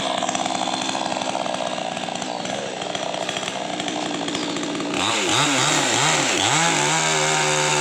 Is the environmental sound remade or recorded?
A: recorded